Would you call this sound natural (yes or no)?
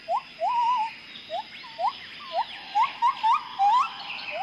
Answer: yes